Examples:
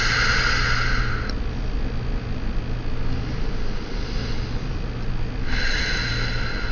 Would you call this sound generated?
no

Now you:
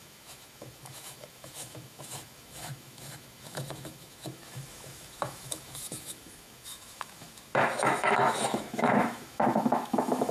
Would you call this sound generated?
yes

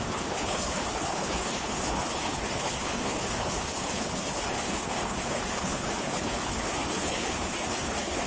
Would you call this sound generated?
yes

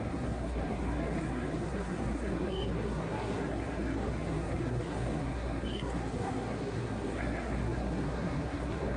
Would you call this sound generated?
yes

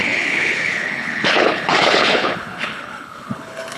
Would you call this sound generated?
yes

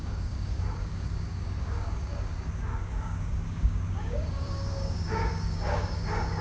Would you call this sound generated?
yes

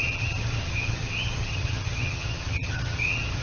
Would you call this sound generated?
yes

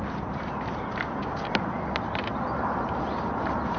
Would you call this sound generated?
no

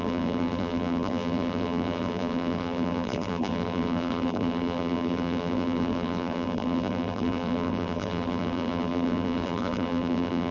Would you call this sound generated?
yes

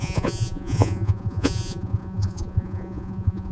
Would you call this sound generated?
yes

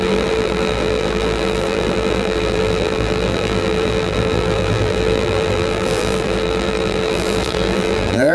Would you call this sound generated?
yes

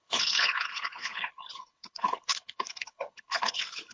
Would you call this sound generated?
yes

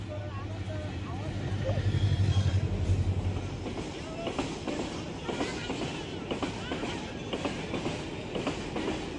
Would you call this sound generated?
no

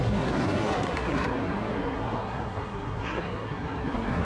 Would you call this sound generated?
yes